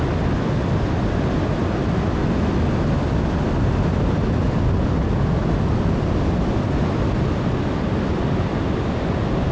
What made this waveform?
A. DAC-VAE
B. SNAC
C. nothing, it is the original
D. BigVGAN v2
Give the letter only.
C